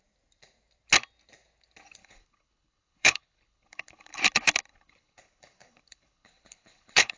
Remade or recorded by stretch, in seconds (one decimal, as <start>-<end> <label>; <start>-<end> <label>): 0.0-2.0 recorded; 2.0-4.2 remade; 4.2-4.7 recorded; 4.7-7.2 remade